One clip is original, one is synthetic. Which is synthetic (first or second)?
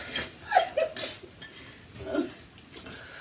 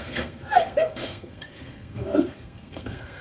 second